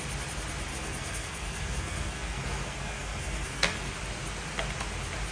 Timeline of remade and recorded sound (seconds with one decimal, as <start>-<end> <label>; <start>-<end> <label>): 0.0-0.7 recorded; 0.7-3.9 remade; 3.9-5.3 recorded